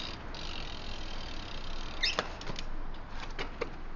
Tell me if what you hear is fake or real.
real